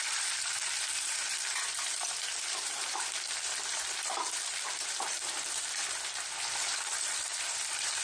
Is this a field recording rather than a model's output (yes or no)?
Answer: no